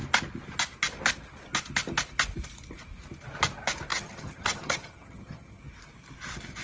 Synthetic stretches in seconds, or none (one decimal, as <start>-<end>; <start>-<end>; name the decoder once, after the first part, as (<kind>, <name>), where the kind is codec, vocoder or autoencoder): 3.9-5.6 (vocoder, HiFi-GAN)